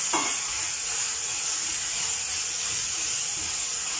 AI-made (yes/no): yes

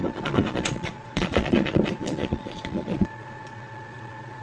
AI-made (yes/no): yes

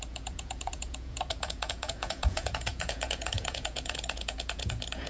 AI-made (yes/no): yes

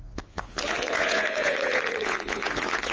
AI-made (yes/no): yes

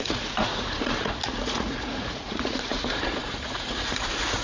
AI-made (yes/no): yes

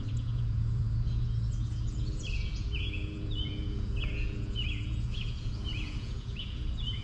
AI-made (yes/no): yes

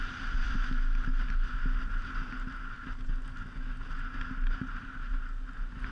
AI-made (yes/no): no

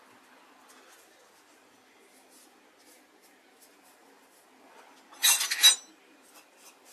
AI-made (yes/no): no